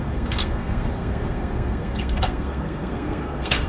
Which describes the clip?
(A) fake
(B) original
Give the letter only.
A